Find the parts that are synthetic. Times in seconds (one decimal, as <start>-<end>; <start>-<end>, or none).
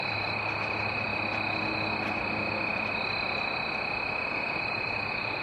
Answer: 0.0-1.1; 4.3-5.4